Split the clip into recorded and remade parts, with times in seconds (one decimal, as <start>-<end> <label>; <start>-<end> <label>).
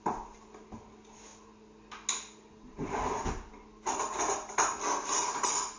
0.0-5.8 recorded